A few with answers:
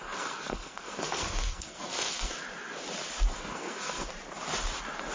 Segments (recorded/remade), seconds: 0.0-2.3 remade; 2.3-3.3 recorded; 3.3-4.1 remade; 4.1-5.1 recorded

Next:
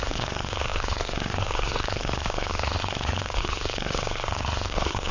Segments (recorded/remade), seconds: 0.0-5.1 remade

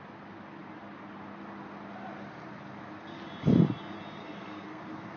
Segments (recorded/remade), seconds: 0.0-4.2 recorded; 4.2-4.8 remade; 4.8-5.2 recorded

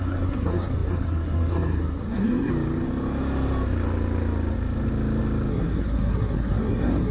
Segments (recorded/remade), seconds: 0.0-2.5 remade; 2.5-5.5 recorded; 5.5-7.1 remade